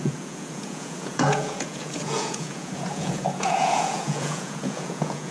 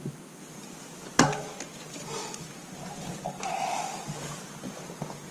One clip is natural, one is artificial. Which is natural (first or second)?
second